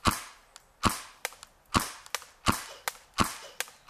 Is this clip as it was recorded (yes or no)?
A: yes